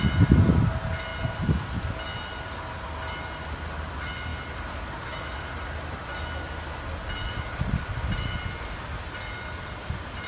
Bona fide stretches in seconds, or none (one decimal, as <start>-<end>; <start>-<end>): 0.0-10.3